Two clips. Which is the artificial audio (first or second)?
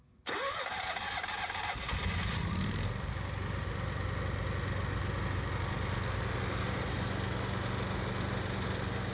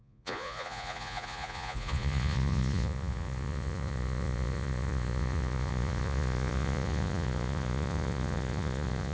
second